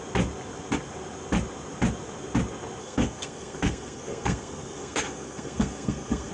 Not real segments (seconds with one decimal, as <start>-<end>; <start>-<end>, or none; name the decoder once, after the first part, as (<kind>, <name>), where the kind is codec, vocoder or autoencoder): 2.8-6.3 (codec, SNAC)